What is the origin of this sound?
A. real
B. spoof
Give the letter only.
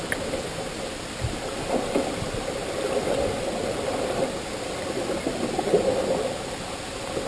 A